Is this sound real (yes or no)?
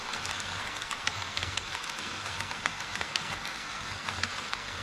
no